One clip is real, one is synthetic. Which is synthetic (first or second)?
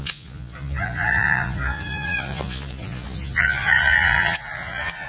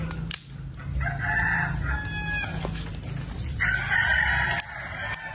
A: first